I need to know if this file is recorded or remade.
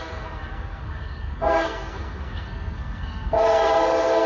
remade